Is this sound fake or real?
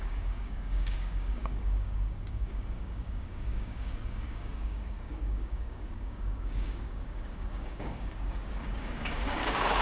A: fake